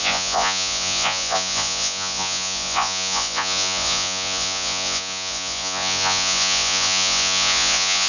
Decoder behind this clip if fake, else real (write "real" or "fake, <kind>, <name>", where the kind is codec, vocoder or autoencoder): fake, vocoder, Vocos